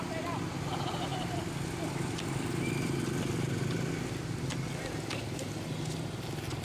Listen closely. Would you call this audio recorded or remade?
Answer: recorded